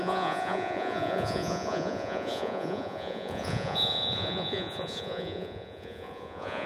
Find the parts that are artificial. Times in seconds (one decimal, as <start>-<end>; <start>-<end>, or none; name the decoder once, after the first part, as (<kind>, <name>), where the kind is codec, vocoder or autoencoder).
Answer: 0.0-6.7 (vocoder, Vocos)